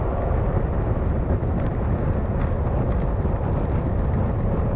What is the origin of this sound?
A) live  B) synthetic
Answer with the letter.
A